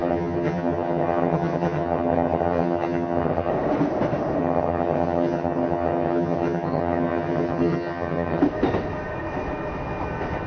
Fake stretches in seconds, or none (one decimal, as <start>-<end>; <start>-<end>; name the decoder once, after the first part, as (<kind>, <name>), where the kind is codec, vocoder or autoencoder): 0.0-3.5 (vocoder, HiFi-GAN); 4.4-8.4